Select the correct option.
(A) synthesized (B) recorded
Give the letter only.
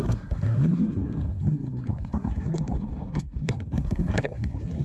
A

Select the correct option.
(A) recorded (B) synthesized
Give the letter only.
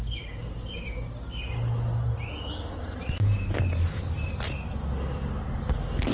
A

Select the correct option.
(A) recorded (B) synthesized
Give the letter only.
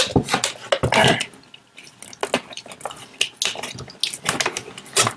A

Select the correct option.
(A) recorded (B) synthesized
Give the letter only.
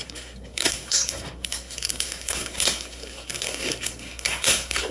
B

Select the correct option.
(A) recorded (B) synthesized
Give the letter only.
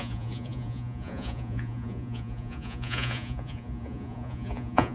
B